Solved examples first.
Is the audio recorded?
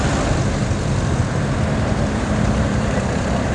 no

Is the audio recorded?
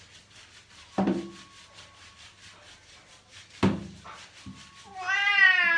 yes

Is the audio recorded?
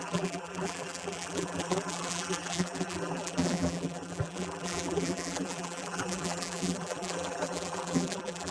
no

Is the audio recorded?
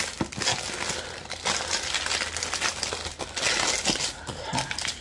yes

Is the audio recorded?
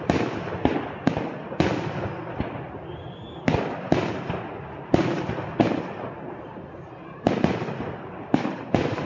yes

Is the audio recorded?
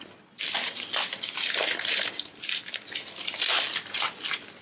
no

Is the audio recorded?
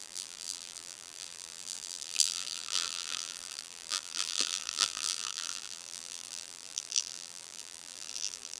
no